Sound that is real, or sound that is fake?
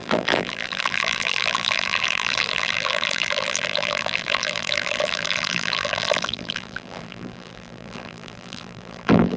fake